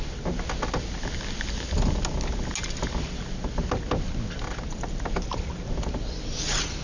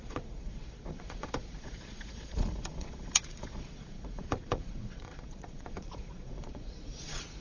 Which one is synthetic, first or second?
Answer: second